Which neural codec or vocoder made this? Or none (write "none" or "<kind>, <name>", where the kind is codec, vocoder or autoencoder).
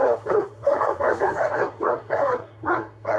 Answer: codec, SNAC